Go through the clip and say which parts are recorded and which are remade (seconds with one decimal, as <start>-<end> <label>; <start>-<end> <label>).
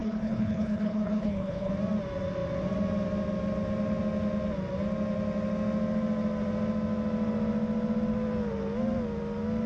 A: 0.0-1.7 remade; 1.7-9.7 recorded